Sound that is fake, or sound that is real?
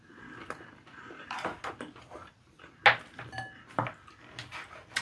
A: real